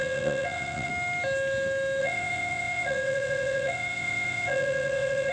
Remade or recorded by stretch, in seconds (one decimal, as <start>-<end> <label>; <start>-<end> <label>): 0.0-0.9 remade; 0.9-2.0 recorded; 2.0-5.3 remade